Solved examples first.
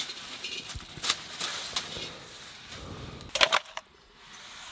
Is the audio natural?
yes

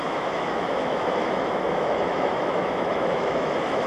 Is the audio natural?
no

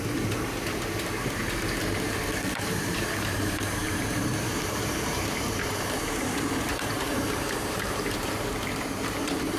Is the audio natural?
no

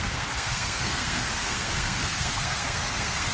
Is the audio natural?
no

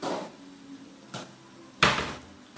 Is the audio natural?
yes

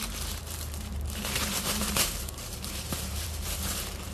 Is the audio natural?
no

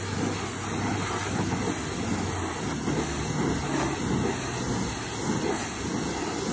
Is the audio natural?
yes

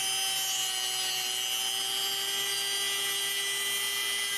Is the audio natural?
yes